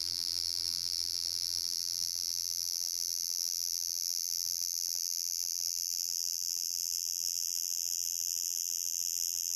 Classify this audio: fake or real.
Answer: fake